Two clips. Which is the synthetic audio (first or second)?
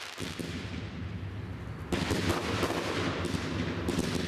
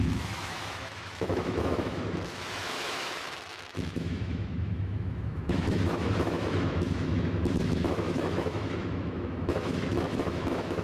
second